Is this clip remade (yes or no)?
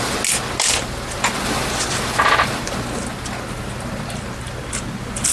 no